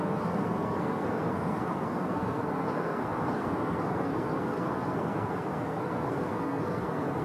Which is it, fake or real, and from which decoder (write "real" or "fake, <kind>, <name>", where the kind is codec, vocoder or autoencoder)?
fake, codec, SNAC